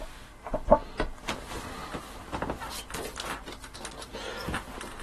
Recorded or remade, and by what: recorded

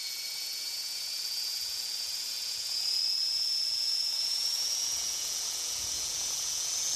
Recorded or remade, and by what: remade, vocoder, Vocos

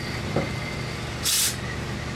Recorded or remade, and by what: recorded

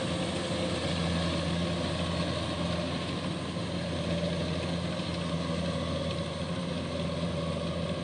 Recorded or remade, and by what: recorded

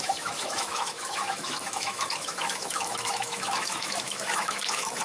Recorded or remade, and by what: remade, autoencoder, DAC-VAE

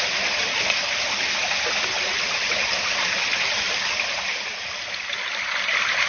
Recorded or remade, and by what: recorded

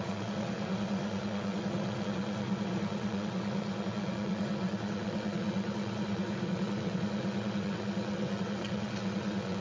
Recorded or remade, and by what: remade, vocoder, WaveNeXt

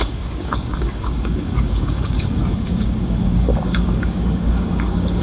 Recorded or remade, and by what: remade, codec, DAC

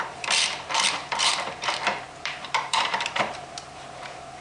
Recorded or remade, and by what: remade, vocoder, BigVGAN v2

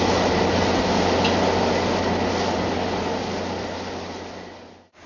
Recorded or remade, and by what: recorded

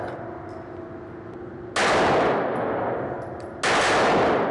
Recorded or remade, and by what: recorded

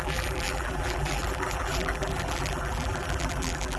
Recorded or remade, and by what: remade, vocoder, BigVGAN v2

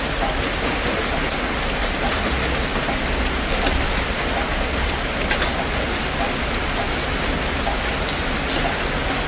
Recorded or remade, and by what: recorded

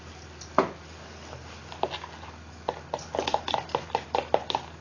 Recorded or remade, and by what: recorded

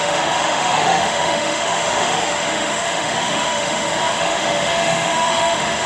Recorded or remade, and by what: remade, autoencoder, DAC-VAE